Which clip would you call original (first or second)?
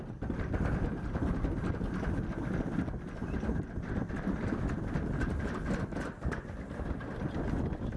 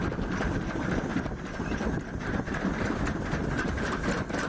first